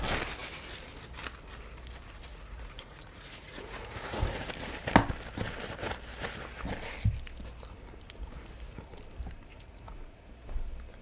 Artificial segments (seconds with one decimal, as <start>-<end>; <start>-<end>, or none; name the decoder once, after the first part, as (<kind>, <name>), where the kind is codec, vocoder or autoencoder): 2.3-4.5 (vocoder, Vocos); 9.5-10.3